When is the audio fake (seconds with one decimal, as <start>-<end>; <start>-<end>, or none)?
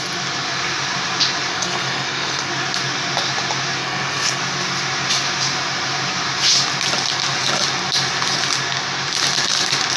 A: 1.5-2.5; 3.8-4.4